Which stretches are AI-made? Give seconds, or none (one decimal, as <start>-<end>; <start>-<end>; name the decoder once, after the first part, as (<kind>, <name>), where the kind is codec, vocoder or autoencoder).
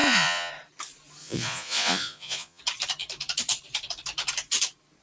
0.0-0.5 (vocoder, Vocos); 1.2-2.6